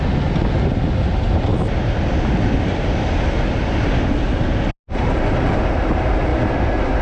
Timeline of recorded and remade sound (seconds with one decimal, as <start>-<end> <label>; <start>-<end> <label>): 0.0-1.5 recorded; 1.5-3.2 remade; 3.2-7.0 recorded